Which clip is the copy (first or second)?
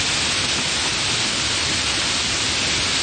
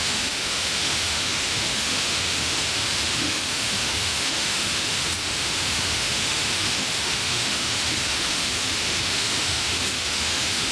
second